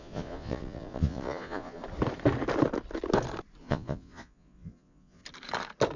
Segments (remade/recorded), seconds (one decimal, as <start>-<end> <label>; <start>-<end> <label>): 0.0-1.8 remade; 1.8-3.6 recorded; 3.6-5.2 remade; 5.2-6.0 recorded

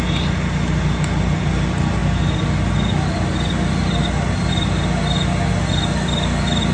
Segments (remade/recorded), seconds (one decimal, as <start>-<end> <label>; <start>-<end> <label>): 0.0-6.7 recorded

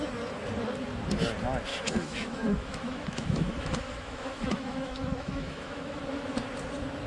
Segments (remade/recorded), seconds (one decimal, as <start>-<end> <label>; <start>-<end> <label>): 0.0-1.7 recorded; 1.7-6.0 remade; 6.0-7.1 recorded

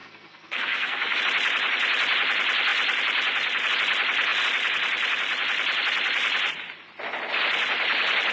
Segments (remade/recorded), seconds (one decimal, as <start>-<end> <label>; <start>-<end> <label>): 0.0-1.2 remade; 1.2-8.3 recorded

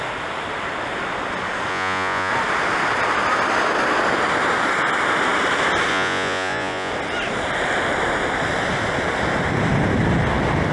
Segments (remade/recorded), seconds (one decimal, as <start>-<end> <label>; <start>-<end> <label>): 0.0-1.7 recorded; 1.7-2.3 remade; 2.3-5.9 recorded; 5.9-6.9 remade; 6.9-10.7 recorded

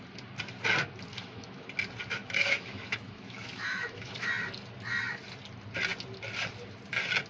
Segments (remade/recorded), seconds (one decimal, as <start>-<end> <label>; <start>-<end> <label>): 0.0-1.1 recorded; 1.1-1.7 remade; 1.7-2.2 recorded; 2.2-4.3 remade; 4.3-7.3 recorded

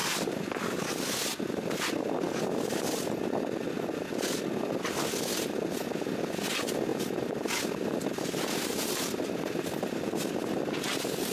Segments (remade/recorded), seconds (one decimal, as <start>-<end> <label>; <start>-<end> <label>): 0.0-0.5 remade; 0.5-11.3 recorded

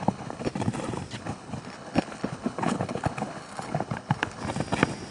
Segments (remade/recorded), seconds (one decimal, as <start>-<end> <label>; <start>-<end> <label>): 0.0-0.5 remade; 0.5-1.2 recorded; 1.2-4.4 remade; 4.4-5.1 recorded